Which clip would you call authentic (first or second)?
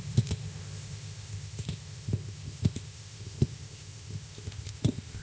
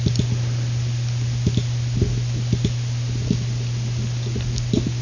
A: second